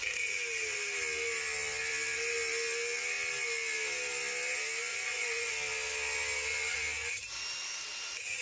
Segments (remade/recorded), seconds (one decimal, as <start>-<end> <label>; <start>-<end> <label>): 0.0-4.9 recorded; 4.9-5.5 remade; 5.5-8.4 recorded